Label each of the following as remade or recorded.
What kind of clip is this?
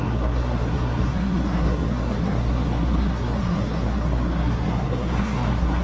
remade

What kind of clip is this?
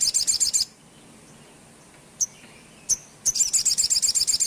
recorded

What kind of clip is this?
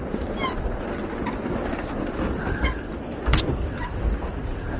recorded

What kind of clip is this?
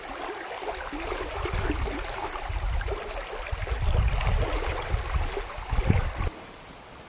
recorded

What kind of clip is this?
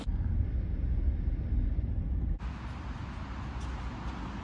recorded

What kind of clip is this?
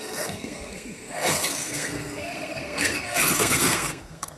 remade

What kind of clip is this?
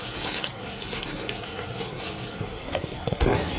remade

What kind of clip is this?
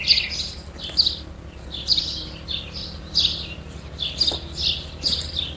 recorded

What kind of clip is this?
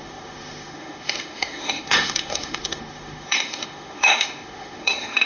remade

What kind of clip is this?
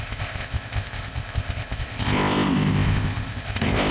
remade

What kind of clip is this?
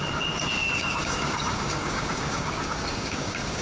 remade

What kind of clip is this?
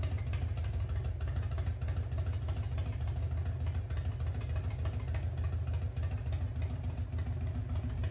recorded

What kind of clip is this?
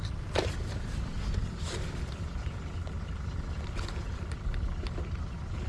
recorded